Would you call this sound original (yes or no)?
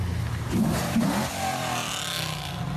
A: yes